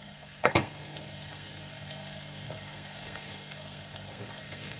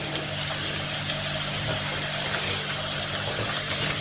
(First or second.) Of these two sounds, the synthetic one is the first